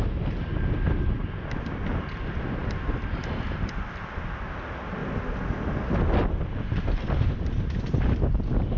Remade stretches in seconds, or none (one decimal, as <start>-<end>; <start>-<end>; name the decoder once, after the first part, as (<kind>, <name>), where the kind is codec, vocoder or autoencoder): none